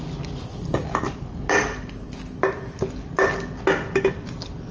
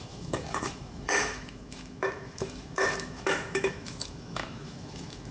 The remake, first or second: second